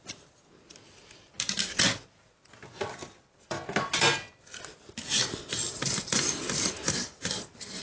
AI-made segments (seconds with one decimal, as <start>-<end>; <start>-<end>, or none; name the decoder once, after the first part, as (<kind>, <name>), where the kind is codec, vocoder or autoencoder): none